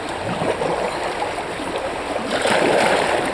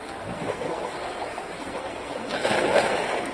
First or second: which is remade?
second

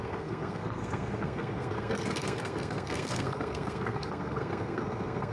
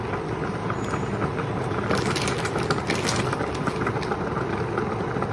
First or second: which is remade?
first